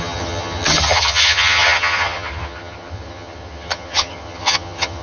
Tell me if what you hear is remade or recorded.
remade